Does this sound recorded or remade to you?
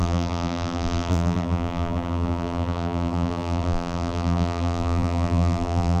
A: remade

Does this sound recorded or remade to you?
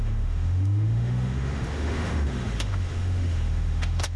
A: remade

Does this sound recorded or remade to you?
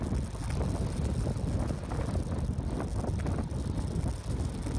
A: recorded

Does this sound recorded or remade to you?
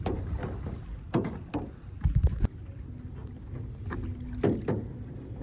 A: recorded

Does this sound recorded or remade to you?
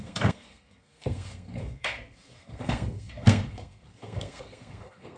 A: remade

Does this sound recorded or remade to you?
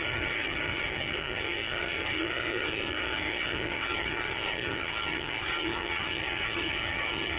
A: remade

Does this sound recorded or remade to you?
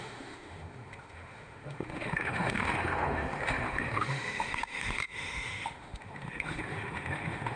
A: remade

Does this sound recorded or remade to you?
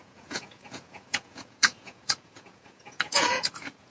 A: remade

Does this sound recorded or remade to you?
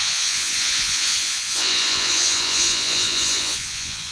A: remade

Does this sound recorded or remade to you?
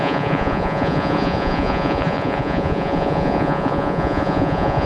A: remade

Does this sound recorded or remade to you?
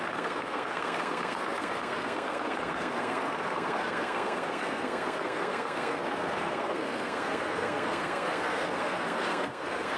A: remade